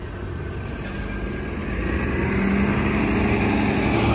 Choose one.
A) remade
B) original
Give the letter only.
B